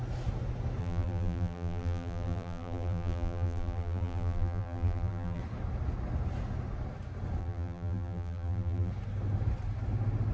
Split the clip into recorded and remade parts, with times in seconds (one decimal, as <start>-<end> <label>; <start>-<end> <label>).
0.0-0.8 recorded; 0.8-5.4 remade; 5.4-7.4 recorded; 7.4-8.9 remade; 8.9-10.3 recorded